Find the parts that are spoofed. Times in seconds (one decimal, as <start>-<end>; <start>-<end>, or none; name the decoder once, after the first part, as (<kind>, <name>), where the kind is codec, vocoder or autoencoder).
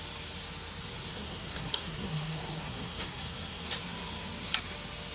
1.1-3.6 (codec, SNAC)